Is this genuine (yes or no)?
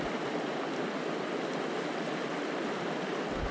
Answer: yes